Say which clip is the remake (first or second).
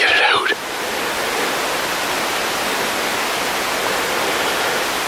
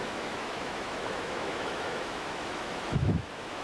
second